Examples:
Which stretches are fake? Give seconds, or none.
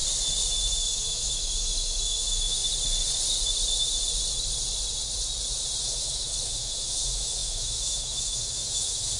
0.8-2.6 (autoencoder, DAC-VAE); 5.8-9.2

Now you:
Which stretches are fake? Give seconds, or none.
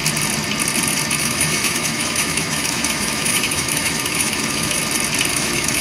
1.2-4.8 (autoencoder, DAC-VAE); 5.3-5.8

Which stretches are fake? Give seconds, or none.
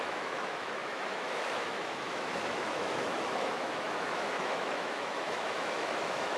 0.0-6.4 (autoencoder, DAC-VAE)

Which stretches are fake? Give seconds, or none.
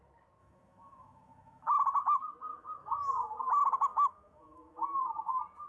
0.4-1.7 (autoencoder, DAC-VAE); 2.5-3.4; 3.9-4.9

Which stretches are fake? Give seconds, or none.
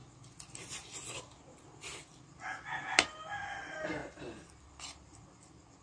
none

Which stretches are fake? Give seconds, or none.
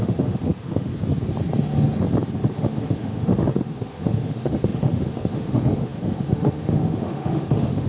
0.0-0.9 (autoencoder, DAC-VAE); 2.5-7.9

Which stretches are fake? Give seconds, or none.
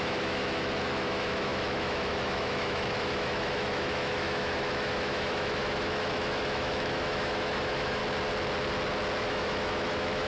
0.0-8.0 (autoencoder, DAC-VAE); 9.2-10.3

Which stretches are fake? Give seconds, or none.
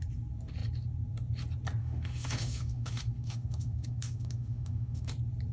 1.8-5.1 (autoencoder, DAC-VAE)